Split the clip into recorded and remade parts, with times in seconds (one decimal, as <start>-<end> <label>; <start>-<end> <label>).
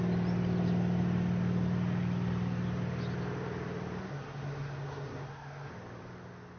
0.0-4.0 recorded; 4.0-5.7 remade; 5.7-6.6 recorded